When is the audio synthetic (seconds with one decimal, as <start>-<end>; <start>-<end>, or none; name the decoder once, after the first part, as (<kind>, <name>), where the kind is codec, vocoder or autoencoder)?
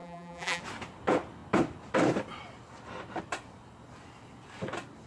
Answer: 0.0-0.6 (vocoder, BigVGAN v2)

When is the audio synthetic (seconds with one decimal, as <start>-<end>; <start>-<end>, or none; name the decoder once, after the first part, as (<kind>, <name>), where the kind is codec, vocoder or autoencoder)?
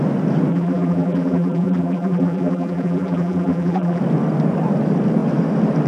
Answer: 0.5-4.0 (vocoder, BigVGAN v2)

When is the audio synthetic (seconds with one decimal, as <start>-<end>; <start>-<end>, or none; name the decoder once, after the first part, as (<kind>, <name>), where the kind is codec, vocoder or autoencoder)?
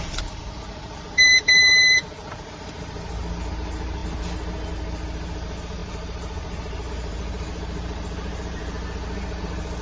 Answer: 0.0-4.0 (vocoder, BigVGAN v2); 4.7-8.6; 9.4-9.8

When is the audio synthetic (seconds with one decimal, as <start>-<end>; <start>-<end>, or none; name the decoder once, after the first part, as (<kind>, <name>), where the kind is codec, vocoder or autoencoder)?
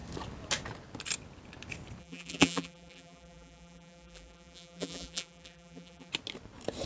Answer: 2.0-6.1 (vocoder, BigVGAN v2)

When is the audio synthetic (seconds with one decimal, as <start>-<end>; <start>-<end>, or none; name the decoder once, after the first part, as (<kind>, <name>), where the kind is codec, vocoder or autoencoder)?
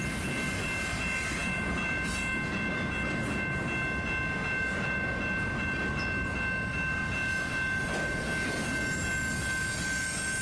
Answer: 1.4-2.1 (vocoder, BigVGAN v2)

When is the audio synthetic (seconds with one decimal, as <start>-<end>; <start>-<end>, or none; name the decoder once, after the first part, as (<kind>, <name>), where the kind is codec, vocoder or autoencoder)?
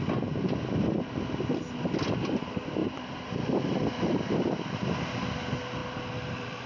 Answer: 2.8-3.3 (vocoder, BigVGAN v2); 3.9-5.0; 5.8-6.7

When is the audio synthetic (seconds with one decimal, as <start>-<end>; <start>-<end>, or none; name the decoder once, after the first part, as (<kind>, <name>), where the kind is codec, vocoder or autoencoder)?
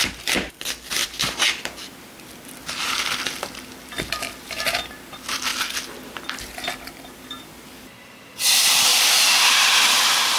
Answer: 0.0-5.5 (vocoder, BigVGAN v2); 7.0-8.9; 9.6-10.4